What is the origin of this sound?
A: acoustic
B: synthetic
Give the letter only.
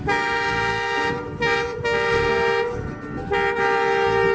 A